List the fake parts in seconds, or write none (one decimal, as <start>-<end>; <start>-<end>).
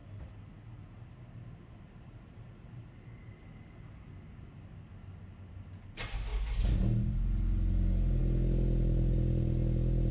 0.0-3.3